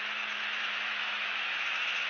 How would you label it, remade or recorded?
remade